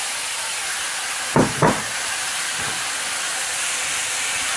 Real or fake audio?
real